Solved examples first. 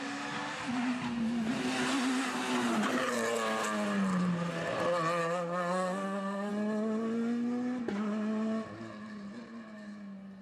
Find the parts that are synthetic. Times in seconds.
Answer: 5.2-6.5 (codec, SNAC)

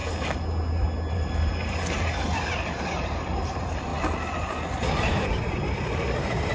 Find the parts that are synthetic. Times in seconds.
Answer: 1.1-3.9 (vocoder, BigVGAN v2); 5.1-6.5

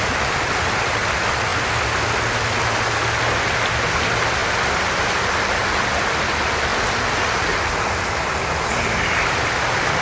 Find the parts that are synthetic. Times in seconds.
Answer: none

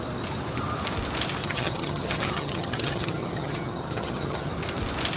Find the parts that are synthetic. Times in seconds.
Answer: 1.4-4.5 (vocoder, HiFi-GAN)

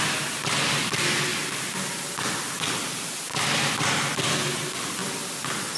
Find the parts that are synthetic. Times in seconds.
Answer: 3.3-3.9 (vocoder, BigVGAN v2); 5.0-5.8

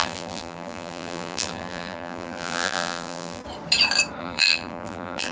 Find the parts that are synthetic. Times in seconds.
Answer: 0.0-3.4 (vocoder, BigVGAN v2); 4.2-5.3

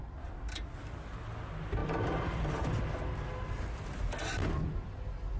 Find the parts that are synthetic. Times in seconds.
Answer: 0.0-1.1 (vocoder, BigVGAN v2); 1.8-2.7